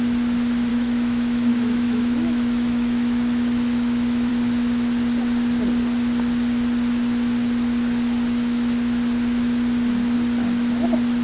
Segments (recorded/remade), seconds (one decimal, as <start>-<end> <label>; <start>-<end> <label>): 0.0-0.7 recorded; 0.7-4.3 remade; 4.3-11.2 recorded